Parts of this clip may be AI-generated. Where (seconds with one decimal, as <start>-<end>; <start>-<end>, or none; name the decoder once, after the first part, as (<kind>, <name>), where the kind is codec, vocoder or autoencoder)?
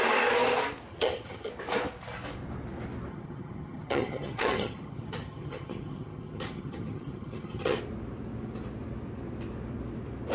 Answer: 0.9-1.5 (vocoder, HiFi-GAN); 3.1-7.8